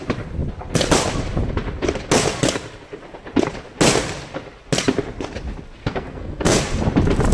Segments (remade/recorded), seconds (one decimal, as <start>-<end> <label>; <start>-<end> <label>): 0.0-5.8 recorded; 5.8-6.6 remade; 6.6-7.3 recorded

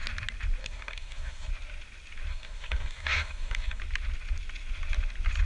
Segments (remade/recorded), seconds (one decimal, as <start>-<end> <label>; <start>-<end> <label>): 0.0-0.6 recorded; 0.6-1.5 remade; 1.5-2.3 recorded; 2.3-3.8 remade; 3.8-5.5 recorded

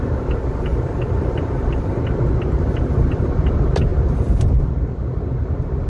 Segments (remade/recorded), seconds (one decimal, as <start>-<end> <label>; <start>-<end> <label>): 0.0-0.7 recorded; 0.7-2.0 remade; 2.0-3.9 recorded; 3.9-4.5 remade; 4.5-5.9 recorded

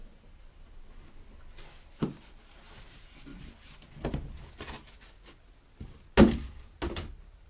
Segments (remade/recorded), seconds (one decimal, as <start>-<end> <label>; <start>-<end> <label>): 0.0-7.5 recorded

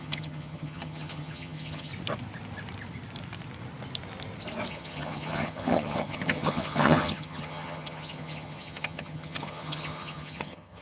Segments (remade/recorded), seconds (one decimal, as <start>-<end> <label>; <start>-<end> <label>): 0.0-1.9 remade; 1.9-4.7 recorded; 4.7-10.8 remade

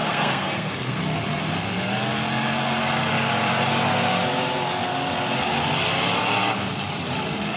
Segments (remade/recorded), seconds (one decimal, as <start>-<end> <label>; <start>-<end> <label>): 0.0-1.0 remade; 1.0-7.6 recorded